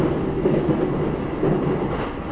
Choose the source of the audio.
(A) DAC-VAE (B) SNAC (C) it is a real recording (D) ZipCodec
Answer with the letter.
C